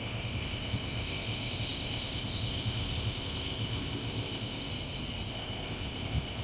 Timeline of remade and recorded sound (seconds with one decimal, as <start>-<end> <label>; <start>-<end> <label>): 0.0-4.7 remade; 4.7-5.3 recorded; 5.3-6.4 remade